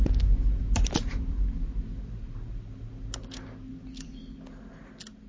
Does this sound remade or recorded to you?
recorded